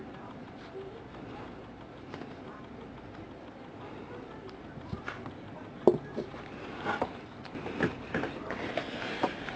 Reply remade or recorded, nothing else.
recorded